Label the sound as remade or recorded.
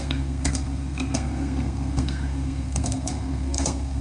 remade